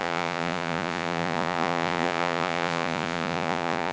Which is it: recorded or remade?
remade